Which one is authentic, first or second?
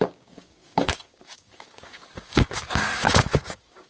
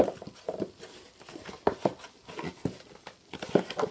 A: second